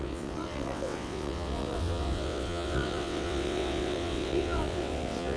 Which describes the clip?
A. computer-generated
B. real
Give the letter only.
A